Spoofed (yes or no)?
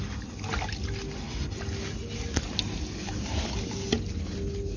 no